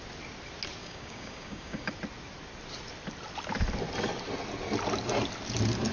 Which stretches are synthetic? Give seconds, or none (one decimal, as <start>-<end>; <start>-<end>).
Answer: 0.8-1.9